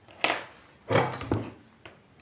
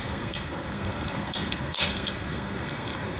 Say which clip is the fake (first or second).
second